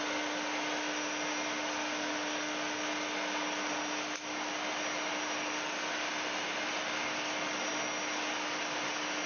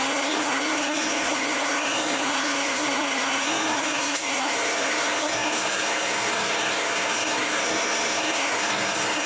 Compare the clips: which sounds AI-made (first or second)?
second